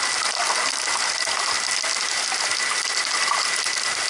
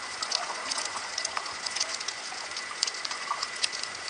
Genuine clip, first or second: first